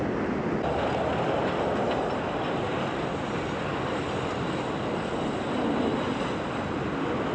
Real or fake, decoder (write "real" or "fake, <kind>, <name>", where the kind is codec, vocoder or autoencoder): real